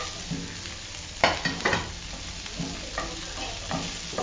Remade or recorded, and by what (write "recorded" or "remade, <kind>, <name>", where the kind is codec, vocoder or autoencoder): recorded